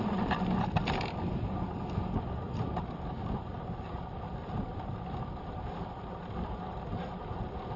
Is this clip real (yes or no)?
yes